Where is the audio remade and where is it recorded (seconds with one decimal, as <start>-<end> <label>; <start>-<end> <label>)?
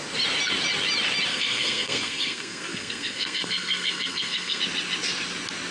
0.0-1.3 recorded; 1.3-4.6 remade; 4.6-5.7 recorded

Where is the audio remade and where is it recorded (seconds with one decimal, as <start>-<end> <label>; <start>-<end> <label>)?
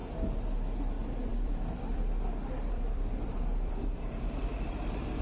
0.0-0.8 recorded; 0.8-5.2 remade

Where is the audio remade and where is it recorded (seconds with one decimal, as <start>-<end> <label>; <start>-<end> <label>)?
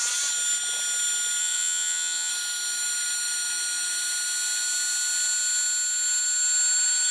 0.0-1.4 recorded; 1.4-2.3 remade; 2.3-7.1 recorded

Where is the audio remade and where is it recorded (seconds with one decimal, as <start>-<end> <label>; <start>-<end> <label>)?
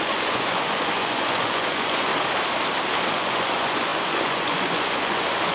0.0-2.1 remade; 2.1-3.1 recorded; 3.1-5.5 remade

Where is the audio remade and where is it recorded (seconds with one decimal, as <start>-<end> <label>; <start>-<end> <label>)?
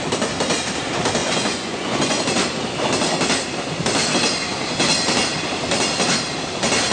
0.0-1.2 recorded; 1.2-2.2 remade; 2.2-6.9 recorded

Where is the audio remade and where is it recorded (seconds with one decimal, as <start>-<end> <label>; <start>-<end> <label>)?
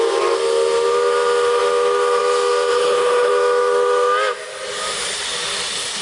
0.0-2.7 recorded; 2.7-3.3 remade; 3.3-6.0 recorded